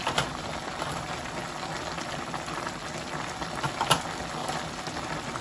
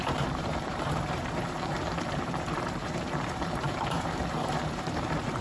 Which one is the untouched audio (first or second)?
first